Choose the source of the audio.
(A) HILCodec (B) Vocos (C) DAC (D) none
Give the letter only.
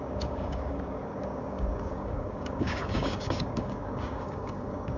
C